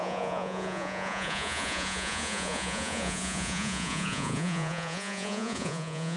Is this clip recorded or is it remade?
remade